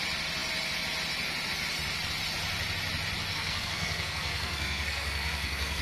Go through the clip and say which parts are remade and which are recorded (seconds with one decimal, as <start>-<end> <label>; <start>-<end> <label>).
0.0-3.3 recorded; 3.3-5.8 remade